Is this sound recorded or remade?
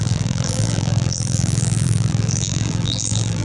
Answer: remade